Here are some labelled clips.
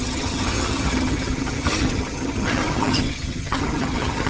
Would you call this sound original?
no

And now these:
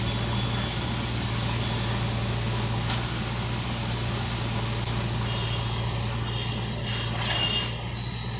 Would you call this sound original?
yes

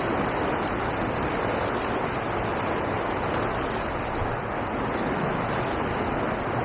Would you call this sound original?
yes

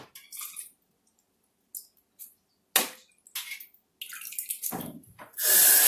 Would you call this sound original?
yes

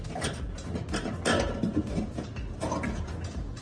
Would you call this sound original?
yes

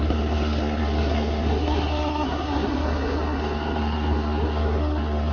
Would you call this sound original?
no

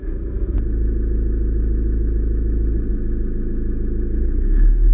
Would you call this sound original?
yes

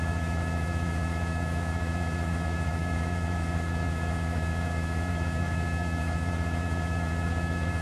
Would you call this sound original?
no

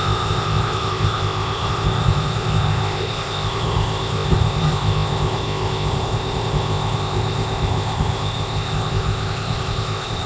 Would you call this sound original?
no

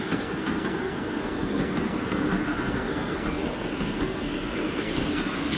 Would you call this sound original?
no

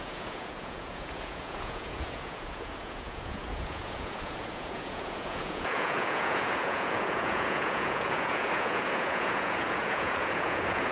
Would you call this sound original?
no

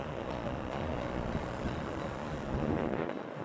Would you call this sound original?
no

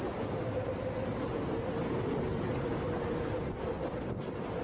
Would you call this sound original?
yes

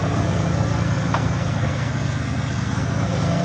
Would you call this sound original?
no